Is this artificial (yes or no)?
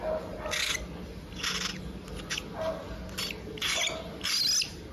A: no